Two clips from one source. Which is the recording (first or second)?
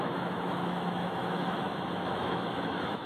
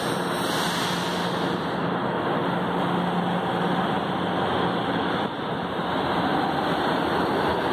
second